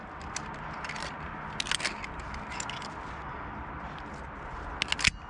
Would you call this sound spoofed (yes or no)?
no